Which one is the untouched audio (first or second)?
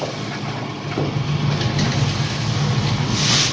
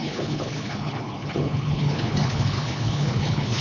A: first